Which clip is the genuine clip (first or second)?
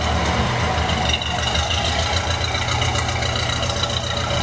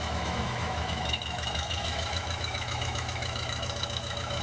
first